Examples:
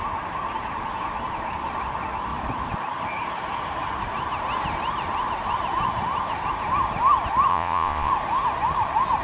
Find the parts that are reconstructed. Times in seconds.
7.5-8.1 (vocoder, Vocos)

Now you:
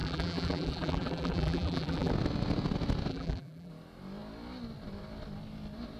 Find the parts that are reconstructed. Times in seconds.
0.0-2.1 (vocoder, BigVGAN v2); 3.1-3.7